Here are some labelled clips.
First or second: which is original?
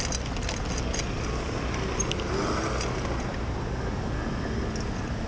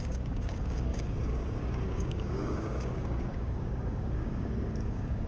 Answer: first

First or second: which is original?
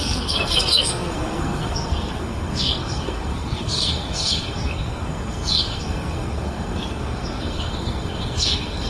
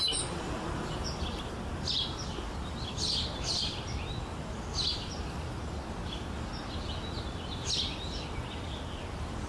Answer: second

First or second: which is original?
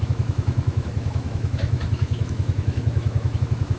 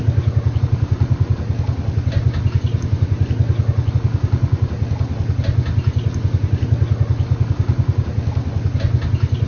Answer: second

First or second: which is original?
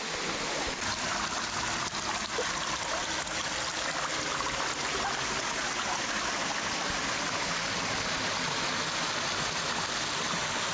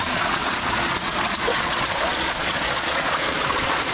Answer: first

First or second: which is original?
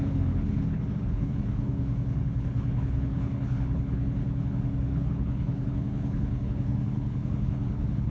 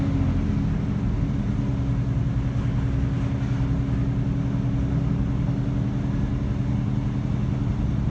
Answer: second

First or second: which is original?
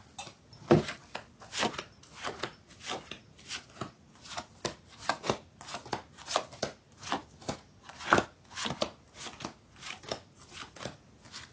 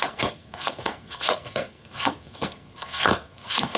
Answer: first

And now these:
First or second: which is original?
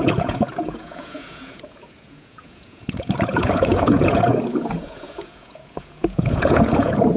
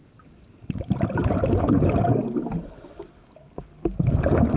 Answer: second